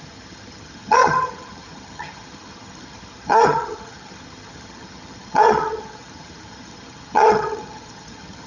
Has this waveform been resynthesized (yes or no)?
yes